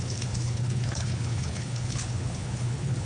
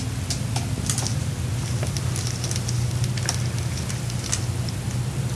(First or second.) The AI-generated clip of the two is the first